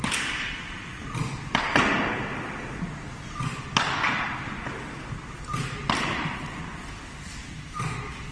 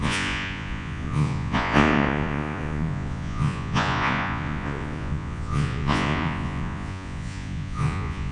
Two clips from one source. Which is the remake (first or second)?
second